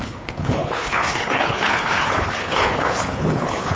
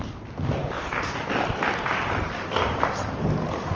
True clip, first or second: second